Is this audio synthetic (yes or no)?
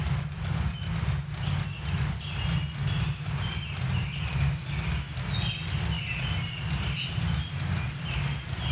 no